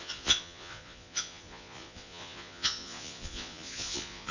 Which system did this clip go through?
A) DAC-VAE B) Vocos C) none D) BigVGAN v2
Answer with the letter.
B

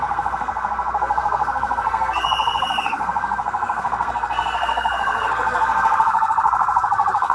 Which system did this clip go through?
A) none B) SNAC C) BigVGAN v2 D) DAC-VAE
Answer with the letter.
B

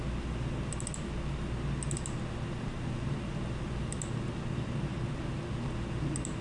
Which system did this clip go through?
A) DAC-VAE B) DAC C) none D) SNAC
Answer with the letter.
C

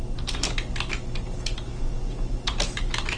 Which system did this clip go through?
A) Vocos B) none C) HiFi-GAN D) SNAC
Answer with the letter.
B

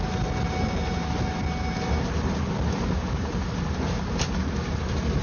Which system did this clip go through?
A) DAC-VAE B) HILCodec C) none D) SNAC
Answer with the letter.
C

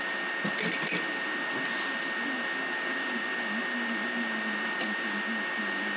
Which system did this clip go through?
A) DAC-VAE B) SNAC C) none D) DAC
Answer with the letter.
C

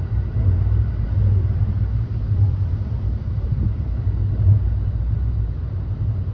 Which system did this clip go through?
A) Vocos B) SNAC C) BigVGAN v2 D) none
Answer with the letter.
C